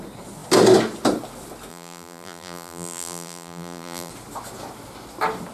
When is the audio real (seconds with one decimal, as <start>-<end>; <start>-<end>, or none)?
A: 0.0-1.7; 4.1-5.5